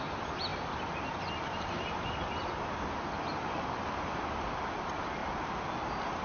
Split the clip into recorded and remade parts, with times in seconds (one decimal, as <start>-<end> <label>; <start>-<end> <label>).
0.0-6.2 recorded